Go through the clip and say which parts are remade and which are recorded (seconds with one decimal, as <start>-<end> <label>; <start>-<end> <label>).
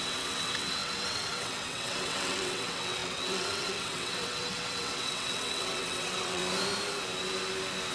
0.0-6.4 remade; 6.4-7.9 recorded